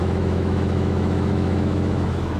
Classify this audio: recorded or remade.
remade